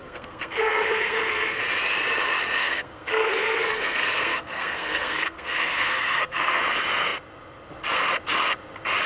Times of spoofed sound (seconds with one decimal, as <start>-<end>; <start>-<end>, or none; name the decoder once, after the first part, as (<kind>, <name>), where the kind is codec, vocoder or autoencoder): 0.0-1.6 (codec, SNAC); 2.6-6.6